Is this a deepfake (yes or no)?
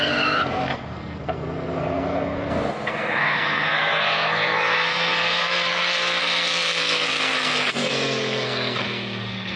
yes